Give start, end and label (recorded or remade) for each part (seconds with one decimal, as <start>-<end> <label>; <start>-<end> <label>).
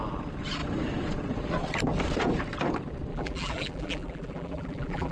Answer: 0.0-3.1 recorded; 3.1-5.1 remade